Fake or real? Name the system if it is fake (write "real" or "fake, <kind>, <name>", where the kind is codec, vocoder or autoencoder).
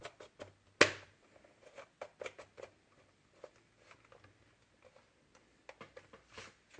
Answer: real